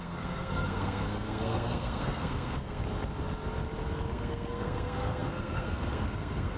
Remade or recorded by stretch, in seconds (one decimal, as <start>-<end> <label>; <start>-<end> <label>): 0.0-2.8 remade; 2.8-4.1 recorded; 4.1-6.6 remade

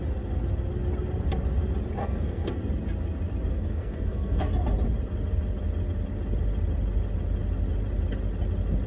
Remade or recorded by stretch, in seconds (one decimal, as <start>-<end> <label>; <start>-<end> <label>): 0.0-2.0 recorded; 2.0-2.6 remade; 2.6-3.5 recorded; 3.5-4.5 remade; 4.5-8.9 recorded

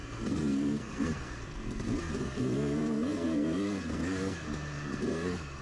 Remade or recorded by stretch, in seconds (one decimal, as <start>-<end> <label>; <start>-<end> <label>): 0.0-5.6 remade

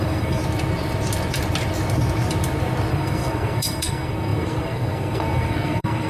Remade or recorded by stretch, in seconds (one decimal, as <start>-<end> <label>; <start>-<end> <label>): 0.0-0.4 remade; 0.4-2.9 recorded; 2.9-6.1 remade

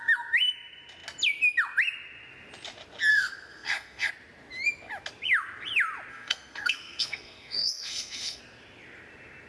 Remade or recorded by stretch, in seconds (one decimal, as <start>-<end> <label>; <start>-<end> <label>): 0.0-3.1 recorded; 3.1-4.1 remade; 4.1-6.1 recorded; 6.1-8.4 remade; 8.4-9.5 recorded